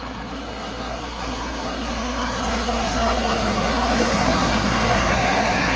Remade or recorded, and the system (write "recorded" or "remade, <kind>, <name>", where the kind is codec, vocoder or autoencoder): remade, codec, SNAC